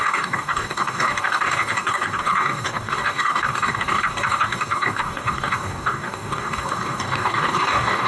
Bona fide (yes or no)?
no